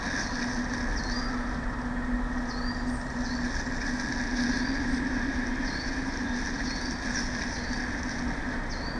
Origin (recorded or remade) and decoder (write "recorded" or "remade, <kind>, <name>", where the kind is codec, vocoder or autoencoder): recorded